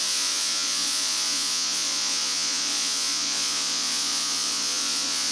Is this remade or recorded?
remade